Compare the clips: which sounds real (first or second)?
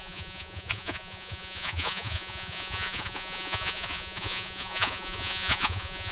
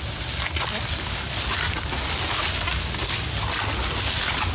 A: second